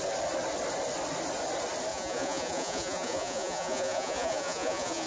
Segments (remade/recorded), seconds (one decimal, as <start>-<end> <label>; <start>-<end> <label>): 0.0-1.9 recorded; 1.9-5.1 remade